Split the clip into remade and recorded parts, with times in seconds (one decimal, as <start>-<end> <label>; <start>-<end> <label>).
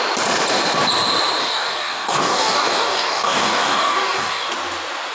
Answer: 0.0-1.4 recorded; 1.4-4.5 remade; 4.5-5.1 recorded